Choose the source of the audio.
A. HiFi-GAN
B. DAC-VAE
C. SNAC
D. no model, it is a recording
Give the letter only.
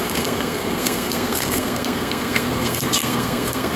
C